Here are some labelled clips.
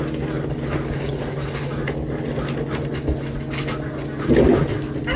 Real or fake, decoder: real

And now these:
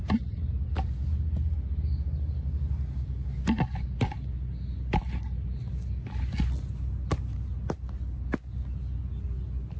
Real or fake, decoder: real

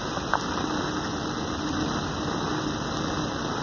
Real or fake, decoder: real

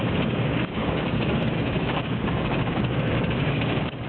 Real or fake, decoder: fake, codec, DAC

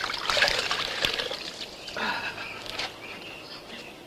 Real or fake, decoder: real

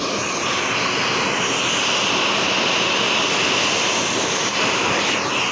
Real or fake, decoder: real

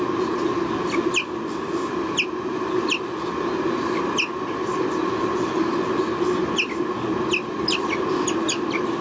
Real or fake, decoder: real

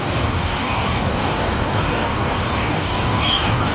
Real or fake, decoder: fake, codec, DAC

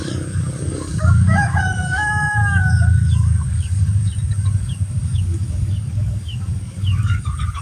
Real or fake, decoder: fake, codec, DAC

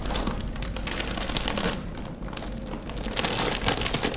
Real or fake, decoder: real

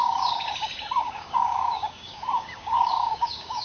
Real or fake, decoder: fake, codec, DAC